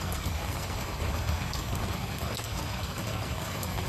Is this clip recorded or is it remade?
remade